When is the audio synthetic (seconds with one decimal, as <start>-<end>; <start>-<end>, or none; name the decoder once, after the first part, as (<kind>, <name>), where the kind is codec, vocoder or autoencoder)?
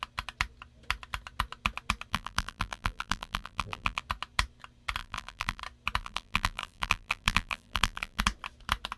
2.1-4.0 (vocoder, BigVGAN v2); 5.0-5.6; 6.0-8.2